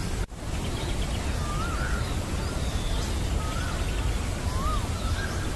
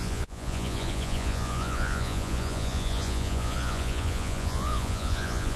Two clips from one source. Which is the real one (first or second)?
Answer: first